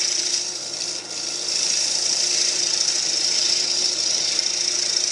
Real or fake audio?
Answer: fake